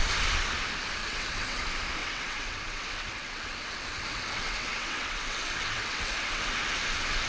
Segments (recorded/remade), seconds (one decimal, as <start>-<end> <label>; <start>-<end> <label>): 0.0-1.0 recorded; 1.0-1.6 remade; 1.6-2.0 recorded; 2.0-6.4 remade; 6.4-7.3 recorded